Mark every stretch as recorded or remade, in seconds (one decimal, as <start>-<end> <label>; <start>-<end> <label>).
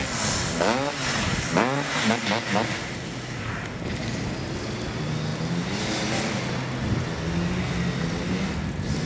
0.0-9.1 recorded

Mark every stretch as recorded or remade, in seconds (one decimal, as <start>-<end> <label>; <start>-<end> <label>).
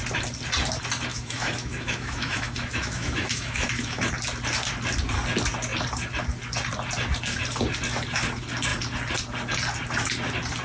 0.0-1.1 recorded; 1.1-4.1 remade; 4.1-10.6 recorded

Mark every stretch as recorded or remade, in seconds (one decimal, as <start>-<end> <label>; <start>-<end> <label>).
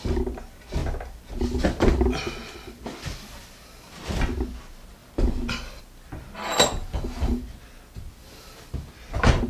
0.0-9.5 recorded